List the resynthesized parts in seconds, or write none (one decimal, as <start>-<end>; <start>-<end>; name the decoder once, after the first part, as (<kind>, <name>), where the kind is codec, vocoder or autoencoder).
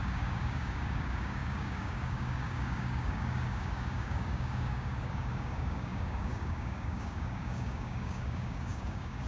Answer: 0.0-9.3 (codec, DAC)